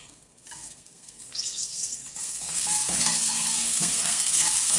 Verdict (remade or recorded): remade